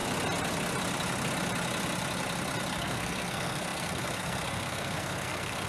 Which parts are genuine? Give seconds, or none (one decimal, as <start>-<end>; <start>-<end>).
0.0-2.8